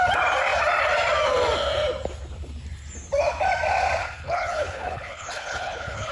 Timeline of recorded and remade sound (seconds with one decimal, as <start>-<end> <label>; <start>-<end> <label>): 0.0-4.0 recorded; 4.0-6.1 remade